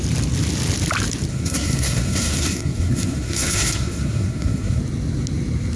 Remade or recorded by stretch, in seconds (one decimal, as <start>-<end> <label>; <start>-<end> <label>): 0.0-1.3 recorded; 1.3-4.8 remade; 4.8-5.8 recorded